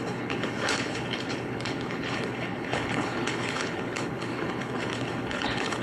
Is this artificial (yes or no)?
yes